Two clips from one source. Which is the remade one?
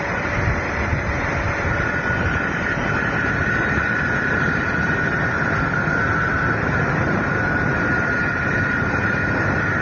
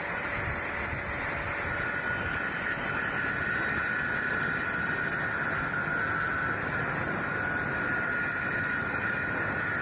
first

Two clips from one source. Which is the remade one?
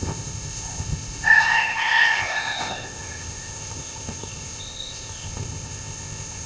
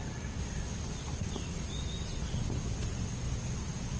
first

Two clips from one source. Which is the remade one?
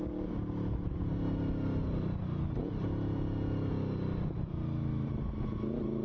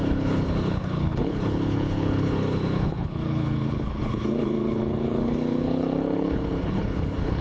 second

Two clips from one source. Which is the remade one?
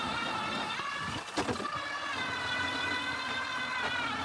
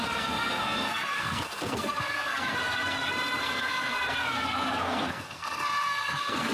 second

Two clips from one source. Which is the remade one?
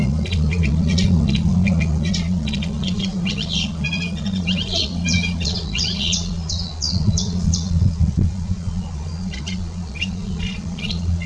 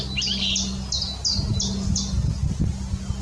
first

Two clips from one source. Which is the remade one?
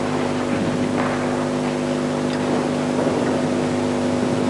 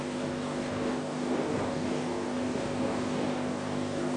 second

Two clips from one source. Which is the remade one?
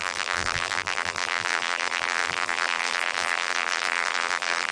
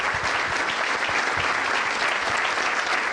first